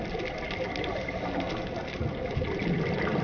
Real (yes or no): yes